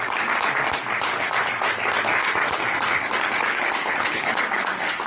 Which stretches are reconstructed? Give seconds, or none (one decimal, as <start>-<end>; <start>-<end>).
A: 3.8-4.4